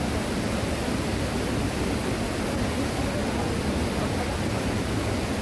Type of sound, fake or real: real